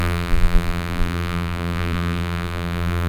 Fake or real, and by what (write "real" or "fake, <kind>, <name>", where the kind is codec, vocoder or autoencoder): fake, vocoder, BigVGAN v2